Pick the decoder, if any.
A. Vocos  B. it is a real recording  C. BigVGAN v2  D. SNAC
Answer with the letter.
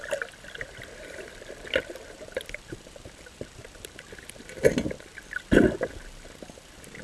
C